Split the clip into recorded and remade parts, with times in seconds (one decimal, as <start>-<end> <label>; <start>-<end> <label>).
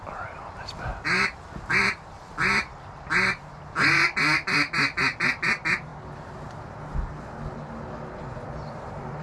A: 0.0-0.9 remade; 0.9-1.8 recorded; 1.8-5.9 remade; 5.9-8.1 recorded; 8.1-9.2 remade